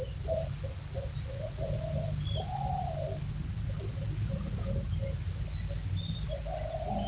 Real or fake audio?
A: real